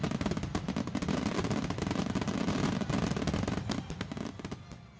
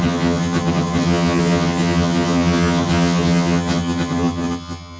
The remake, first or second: second